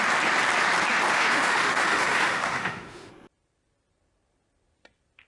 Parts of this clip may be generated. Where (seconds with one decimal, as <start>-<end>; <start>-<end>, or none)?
1.1-3.1